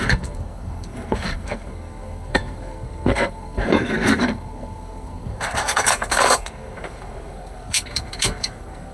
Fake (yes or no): yes